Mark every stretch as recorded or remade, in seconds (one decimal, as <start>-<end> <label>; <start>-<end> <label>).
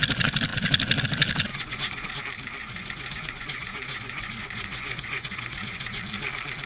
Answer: 0.0-1.5 recorded; 1.5-2.2 remade; 2.2-2.6 recorded; 2.6-6.0 remade; 6.0-6.7 recorded